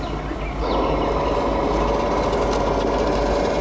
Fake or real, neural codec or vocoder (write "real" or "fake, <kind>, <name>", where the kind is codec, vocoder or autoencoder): real